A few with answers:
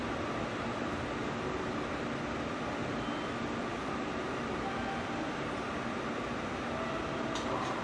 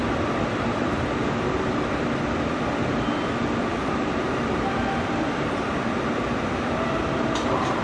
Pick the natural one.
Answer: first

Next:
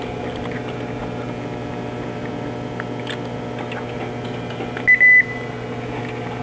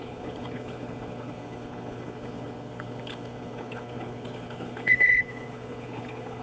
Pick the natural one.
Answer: first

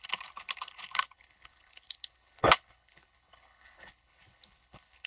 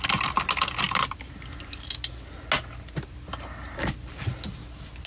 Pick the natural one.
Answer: second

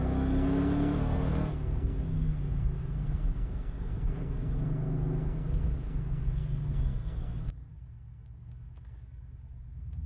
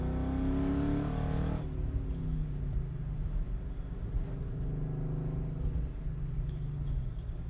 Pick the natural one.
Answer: second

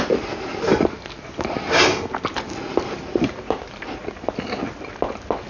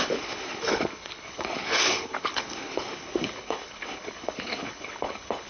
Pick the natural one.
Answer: first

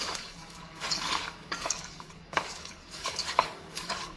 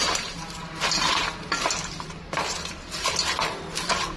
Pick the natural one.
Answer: second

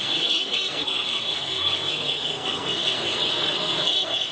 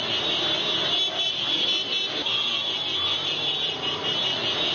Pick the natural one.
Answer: second